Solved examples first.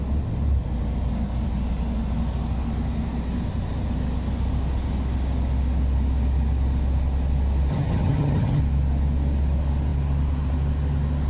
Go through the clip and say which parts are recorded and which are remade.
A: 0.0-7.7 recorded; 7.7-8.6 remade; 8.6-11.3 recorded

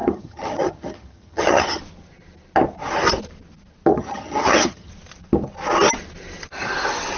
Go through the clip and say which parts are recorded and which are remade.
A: 0.0-1.8 remade; 1.8-3.9 recorded; 3.9-4.9 remade; 4.9-7.2 recorded

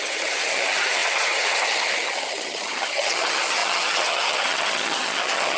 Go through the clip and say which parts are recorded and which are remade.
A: 0.0-5.6 remade

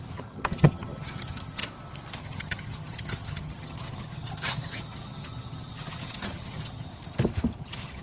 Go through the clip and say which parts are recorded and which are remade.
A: 0.0-1.6 remade; 1.6-2.2 recorded; 2.2-6.9 remade; 6.9-7.6 recorded; 7.6-8.0 remade

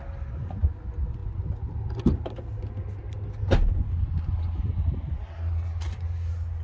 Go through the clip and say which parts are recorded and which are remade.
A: 0.0-6.6 recorded

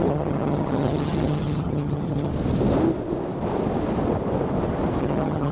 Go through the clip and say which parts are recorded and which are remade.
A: 0.0-2.3 remade; 2.3-5.0 recorded; 5.0-5.5 remade

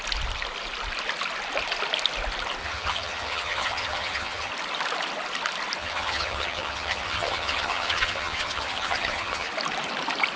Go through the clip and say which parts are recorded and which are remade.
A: 0.0-2.6 recorded; 2.6-4.5 remade; 4.5-5.8 recorded; 5.8-9.5 remade; 9.5-10.4 recorded

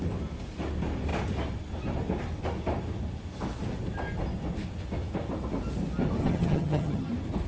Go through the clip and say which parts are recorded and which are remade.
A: 0.0-6.2 recorded; 6.2-7.1 remade; 7.1-7.5 recorded